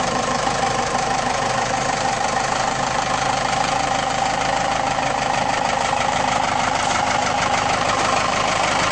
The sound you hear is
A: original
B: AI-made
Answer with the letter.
B